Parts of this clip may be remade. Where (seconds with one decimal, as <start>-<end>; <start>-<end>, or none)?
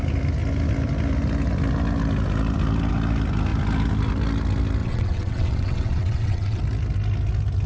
4.8-6.6